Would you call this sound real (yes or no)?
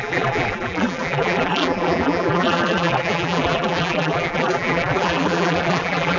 no